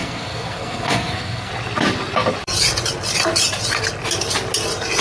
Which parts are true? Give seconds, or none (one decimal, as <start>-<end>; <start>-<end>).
1.5-5.0